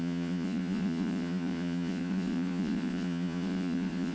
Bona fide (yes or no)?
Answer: no